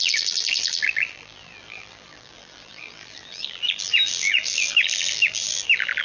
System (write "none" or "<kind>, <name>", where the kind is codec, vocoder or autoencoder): vocoder, BigVGAN v2